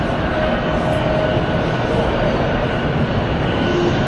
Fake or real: real